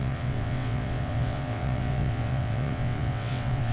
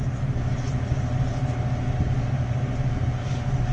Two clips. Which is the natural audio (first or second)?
second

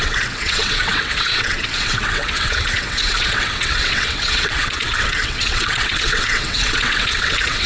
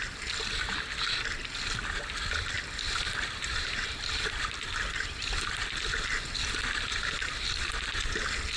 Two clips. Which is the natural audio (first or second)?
second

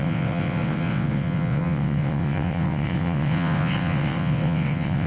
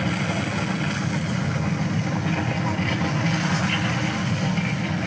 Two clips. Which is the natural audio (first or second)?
second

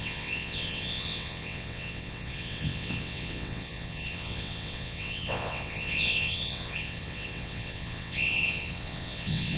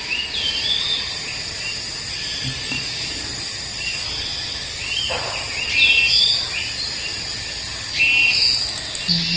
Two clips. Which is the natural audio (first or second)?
second